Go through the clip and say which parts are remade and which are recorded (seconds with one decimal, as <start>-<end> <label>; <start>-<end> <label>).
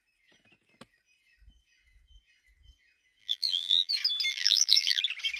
0.0-3.2 recorded; 3.2-3.9 remade; 3.9-4.3 recorded; 4.3-5.0 remade; 5.0-5.4 recorded